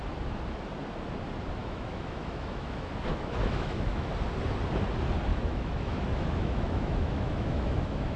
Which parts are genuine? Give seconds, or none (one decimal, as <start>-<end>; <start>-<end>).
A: 0.0-1.6; 4.1-5.3